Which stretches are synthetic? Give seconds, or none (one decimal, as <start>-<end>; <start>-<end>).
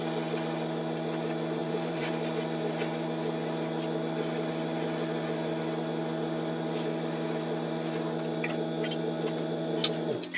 1.6-2.1